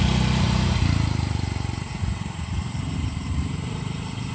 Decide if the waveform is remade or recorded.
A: remade